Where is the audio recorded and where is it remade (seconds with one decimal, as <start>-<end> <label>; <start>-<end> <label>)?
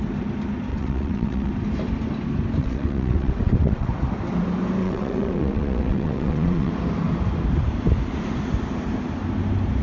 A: 0.0-0.7 recorded; 0.7-1.5 remade; 1.5-2.6 recorded; 2.6-3.9 remade; 3.9-4.8 recorded; 4.8-6.7 remade; 6.7-9.8 recorded